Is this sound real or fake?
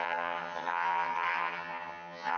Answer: fake